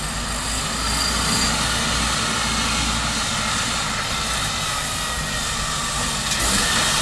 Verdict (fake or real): real